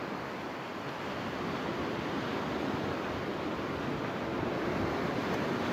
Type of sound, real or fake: real